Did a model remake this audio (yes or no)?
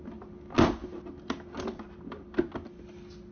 no